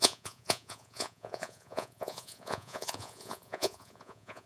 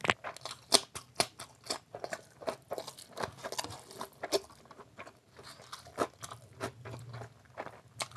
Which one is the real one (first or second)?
second